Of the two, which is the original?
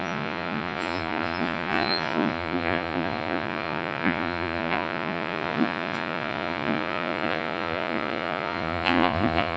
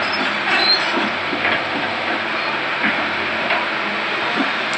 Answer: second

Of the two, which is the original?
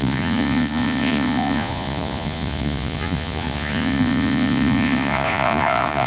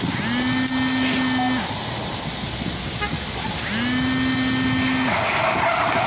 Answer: second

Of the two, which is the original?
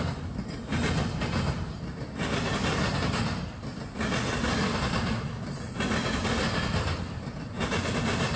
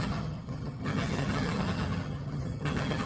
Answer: first